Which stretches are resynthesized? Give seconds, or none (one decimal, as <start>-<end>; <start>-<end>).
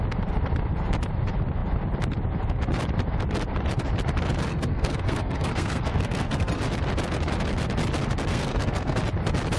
4.5-6.6; 8.3-9.0